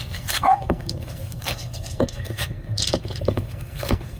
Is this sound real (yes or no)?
no